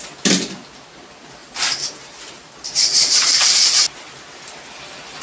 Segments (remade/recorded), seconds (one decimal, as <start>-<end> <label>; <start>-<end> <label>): 0.0-1.4 recorded; 1.4-2.1 remade; 2.1-2.9 recorded; 2.9-3.8 remade; 3.8-5.2 recorded